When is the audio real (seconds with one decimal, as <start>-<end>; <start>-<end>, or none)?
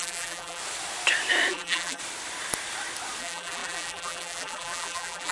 0.6-1.5; 2.0-3.2